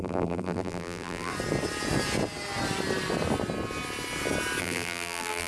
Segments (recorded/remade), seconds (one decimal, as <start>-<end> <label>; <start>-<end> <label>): 0.0-1.3 remade; 1.3-4.6 recorded; 4.6-5.5 remade